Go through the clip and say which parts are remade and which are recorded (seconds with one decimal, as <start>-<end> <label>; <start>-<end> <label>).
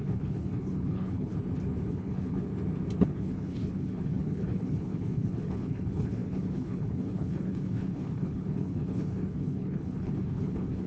0.0-1.3 remade; 1.3-1.9 recorded; 1.9-2.5 remade; 2.5-3.0 recorded; 3.0-10.9 remade